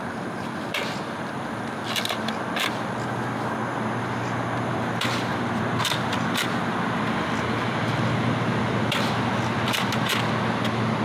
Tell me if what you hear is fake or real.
real